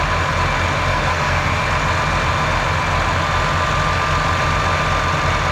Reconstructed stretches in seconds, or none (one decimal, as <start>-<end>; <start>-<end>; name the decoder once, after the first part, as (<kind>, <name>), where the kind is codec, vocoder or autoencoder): 0.9-1.6 (codec, SNAC)